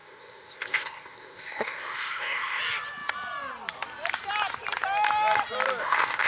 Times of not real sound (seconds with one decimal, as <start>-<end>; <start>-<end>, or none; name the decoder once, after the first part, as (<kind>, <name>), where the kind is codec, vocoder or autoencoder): 0.0-2.6 (codec, ZipCodec); 5.8-6.3